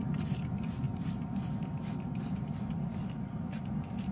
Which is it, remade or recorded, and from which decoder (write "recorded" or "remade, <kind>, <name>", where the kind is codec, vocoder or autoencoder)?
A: recorded